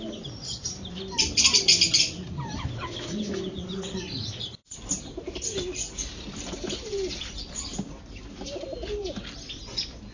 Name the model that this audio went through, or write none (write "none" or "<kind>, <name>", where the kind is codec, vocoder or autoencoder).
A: none